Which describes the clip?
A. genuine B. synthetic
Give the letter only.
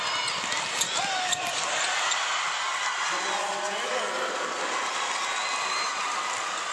B